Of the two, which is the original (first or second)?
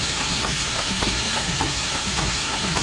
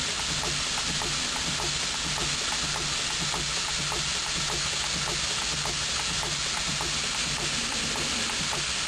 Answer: second